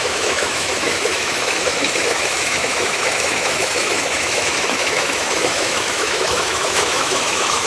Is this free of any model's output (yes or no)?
no